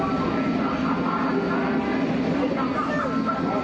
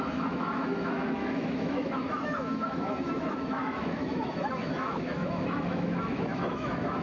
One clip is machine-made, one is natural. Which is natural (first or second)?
first